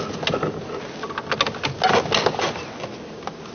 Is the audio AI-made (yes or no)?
no